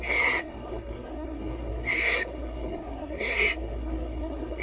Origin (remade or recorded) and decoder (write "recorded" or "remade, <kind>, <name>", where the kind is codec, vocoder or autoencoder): remade, codec, SNAC